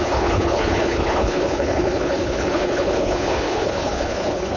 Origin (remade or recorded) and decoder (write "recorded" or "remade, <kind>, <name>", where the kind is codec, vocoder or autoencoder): remade, codec, HILCodec